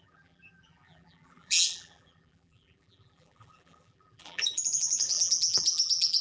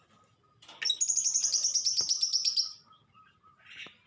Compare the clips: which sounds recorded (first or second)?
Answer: second